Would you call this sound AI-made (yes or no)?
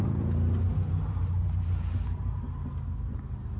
no